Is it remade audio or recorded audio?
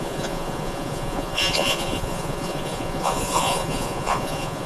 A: remade